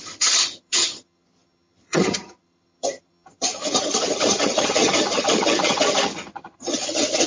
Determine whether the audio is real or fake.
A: fake